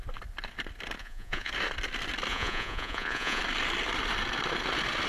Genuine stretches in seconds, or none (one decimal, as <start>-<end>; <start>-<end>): 0.0-1.0; 1.5-2.3; 3.4-5.1